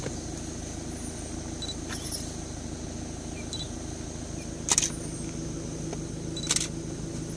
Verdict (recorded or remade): recorded